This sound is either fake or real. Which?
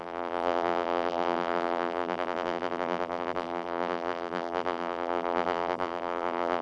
fake